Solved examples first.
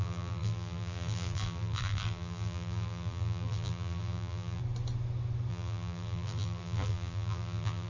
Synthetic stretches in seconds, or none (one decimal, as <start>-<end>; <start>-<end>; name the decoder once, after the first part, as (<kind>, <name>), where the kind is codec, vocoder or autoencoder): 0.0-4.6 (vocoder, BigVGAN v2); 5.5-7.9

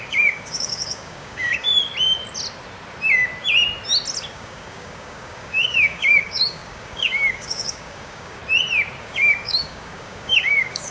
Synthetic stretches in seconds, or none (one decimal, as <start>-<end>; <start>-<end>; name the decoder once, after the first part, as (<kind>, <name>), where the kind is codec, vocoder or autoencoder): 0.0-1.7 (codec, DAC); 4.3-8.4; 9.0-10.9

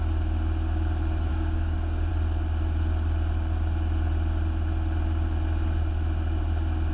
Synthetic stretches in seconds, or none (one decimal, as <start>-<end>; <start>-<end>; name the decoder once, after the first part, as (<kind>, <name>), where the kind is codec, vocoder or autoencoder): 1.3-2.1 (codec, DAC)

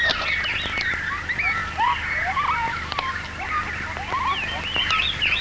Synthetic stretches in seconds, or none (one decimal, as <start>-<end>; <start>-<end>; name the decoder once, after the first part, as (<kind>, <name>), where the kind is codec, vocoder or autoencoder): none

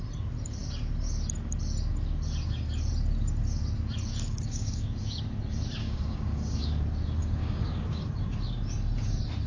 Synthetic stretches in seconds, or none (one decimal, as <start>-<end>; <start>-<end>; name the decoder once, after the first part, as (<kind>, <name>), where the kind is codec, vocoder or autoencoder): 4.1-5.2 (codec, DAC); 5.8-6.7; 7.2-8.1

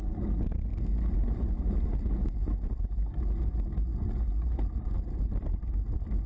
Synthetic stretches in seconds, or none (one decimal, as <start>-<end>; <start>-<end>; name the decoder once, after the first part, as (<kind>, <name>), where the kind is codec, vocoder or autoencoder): none

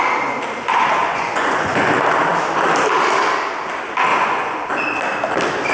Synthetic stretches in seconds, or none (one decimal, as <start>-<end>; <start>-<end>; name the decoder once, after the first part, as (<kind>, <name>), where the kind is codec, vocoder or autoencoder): 1.0-1.9 (vocoder, Vocos); 4.1-4.7

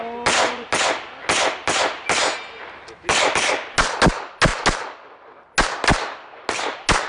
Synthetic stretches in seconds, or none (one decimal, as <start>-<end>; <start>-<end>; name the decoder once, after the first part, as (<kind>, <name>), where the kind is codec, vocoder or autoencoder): none